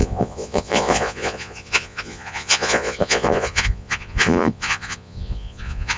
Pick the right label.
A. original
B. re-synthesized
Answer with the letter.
B